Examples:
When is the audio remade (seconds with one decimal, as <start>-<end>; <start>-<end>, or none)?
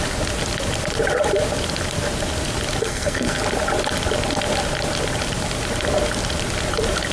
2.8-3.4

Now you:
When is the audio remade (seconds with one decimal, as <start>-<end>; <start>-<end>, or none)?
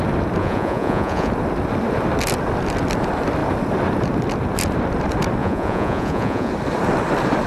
0.4-1.3; 5.4-6.5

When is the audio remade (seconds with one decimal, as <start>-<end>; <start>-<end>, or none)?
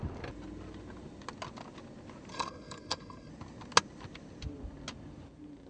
2.3-3.3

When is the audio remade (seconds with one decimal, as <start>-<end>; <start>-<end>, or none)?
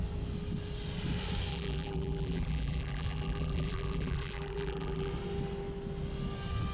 1.5-5.1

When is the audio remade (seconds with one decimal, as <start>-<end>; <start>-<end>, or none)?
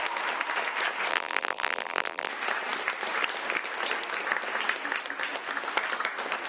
1.1-2.3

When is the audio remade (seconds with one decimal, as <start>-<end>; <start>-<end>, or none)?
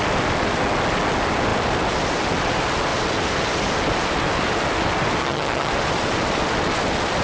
5.2-5.7